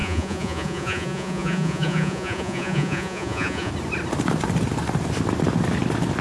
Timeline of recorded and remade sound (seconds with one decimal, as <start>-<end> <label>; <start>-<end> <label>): 0.0-3.7 remade; 3.7-6.2 recorded